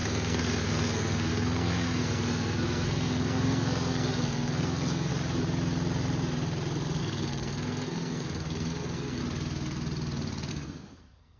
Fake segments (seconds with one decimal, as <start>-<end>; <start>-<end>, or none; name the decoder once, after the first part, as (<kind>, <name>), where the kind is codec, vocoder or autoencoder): 0.0-5.1 (codec, SNAC); 7.0-9.2; 10.5-11.4